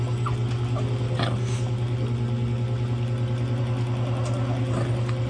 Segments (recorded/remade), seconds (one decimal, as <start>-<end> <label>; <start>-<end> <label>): 0.0-5.3 recorded